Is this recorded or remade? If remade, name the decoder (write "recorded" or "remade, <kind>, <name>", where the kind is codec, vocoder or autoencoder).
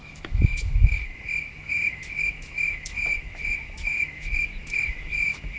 remade, autoencoder, DAC-VAE